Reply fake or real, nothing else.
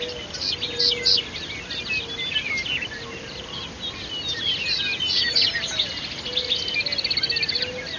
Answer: real